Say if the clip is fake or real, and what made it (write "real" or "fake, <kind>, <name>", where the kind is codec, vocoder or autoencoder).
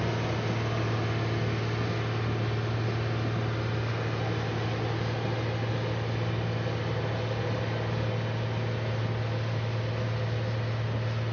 real